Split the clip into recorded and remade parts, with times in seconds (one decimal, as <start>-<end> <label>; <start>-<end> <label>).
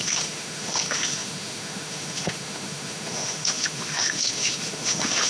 0.0-5.3 remade